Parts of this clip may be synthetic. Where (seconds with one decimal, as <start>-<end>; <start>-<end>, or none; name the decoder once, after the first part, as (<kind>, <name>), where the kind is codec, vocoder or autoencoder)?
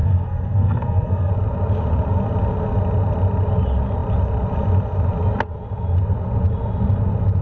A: 0.0-1.3 (codec, SNAC)